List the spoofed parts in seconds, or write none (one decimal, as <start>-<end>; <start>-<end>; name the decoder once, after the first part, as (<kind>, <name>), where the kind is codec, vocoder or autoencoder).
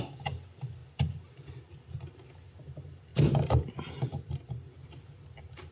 3.1-4.3 (vocoder, BigVGAN v2)